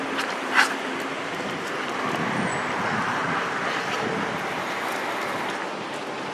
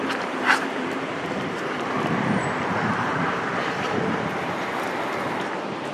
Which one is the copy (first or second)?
second